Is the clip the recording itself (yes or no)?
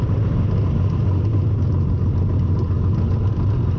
yes